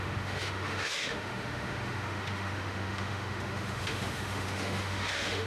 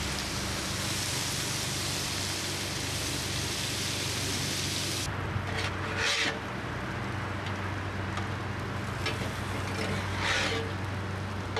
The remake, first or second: first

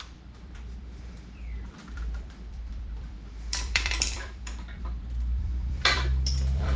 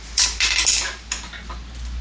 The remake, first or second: first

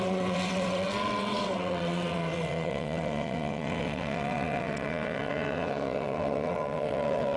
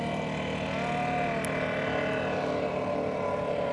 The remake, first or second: first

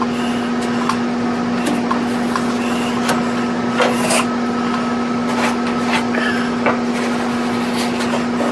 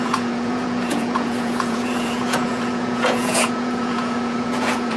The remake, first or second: second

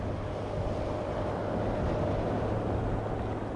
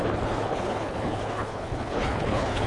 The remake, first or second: second